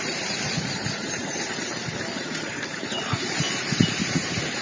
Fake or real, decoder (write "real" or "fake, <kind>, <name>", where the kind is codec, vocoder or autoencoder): fake, vocoder, BigVGAN v2